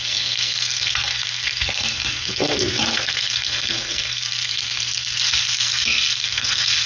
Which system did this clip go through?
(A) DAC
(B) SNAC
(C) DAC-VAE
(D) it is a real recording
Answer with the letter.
B